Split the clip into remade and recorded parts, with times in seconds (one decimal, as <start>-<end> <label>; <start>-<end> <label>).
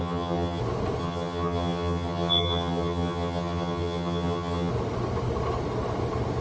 0.0-0.6 remade; 0.6-1.0 recorded; 1.0-4.7 remade; 4.7-6.4 recorded